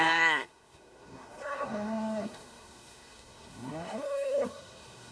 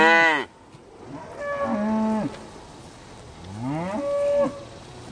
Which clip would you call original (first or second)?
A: second